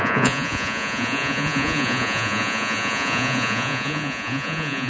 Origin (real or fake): fake